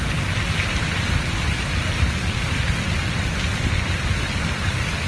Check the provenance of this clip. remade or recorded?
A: recorded